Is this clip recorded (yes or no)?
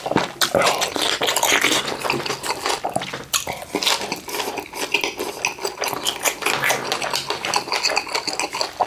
yes